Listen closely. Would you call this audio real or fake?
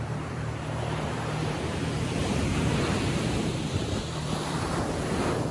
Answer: fake